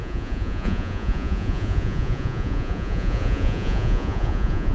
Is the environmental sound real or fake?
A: fake